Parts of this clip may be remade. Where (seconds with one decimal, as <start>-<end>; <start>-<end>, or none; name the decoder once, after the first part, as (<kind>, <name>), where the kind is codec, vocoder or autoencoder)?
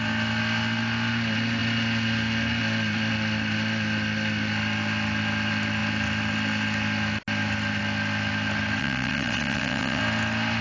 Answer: 8.8-10.0 (vocoder, WaveNeXt)